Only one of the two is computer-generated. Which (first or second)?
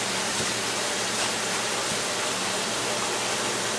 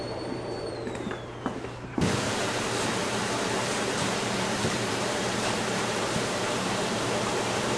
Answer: second